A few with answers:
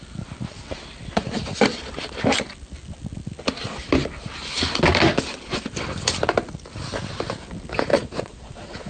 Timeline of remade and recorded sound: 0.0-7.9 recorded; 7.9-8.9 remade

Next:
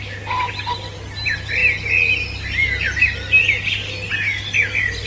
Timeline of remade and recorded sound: 0.0-5.1 recorded

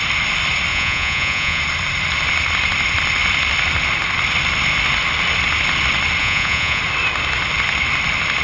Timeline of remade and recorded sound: 0.0-0.7 recorded; 0.7-1.6 remade; 1.6-6.2 recorded; 6.2-6.8 remade; 6.8-8.4 recorded

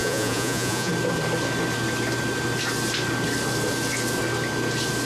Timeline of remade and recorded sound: 0.0-0.9 remade; 0.9-5.1 recorded